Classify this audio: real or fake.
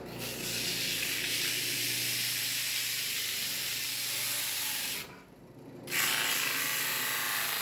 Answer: real